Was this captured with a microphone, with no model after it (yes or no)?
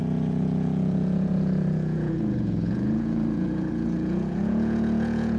no